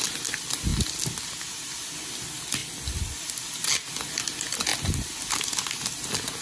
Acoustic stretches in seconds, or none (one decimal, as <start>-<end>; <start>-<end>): 0.0-6.4